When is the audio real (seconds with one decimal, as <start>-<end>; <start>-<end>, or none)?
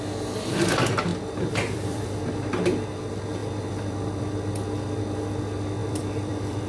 0.0-1.1; 2.3-3.4; 4.2-5.8